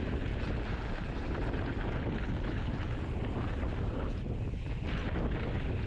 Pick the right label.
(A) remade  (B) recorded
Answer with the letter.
B